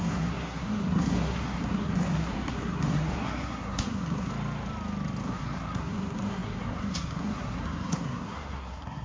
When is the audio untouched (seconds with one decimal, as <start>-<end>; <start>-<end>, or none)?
4.3-5.2